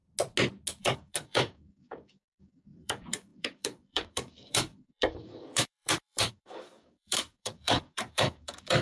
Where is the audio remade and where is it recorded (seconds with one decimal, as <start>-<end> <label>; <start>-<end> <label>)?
0.0-0.8 recorded; 0.8-8.8 remade